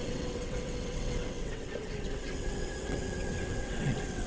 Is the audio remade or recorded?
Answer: remade